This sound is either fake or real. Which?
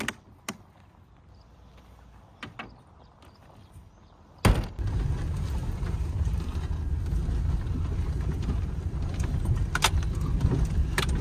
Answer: real